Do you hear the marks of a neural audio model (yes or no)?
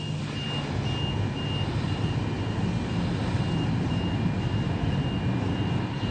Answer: no